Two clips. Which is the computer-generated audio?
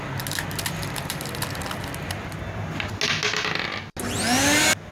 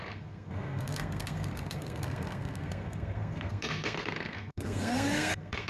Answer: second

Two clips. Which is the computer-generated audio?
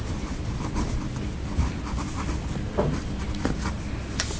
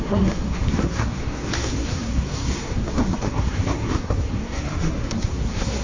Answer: second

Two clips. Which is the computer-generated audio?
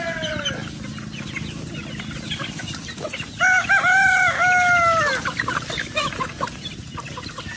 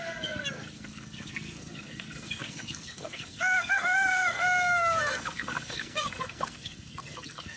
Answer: second